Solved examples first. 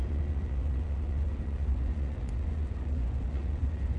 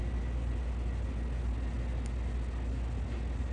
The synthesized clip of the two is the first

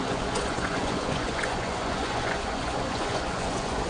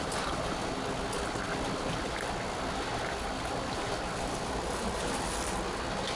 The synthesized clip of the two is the first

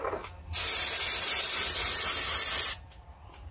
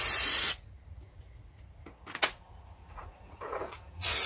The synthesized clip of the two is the second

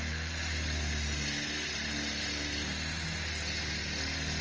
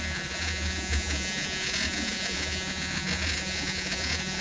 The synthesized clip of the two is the second